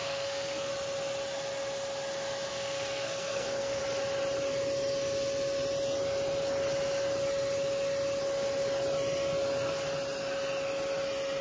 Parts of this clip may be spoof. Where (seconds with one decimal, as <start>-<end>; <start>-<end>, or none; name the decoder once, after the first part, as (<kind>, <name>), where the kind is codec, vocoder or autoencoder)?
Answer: 0.0-0.7 (codec, SNAC); 2.5-3.8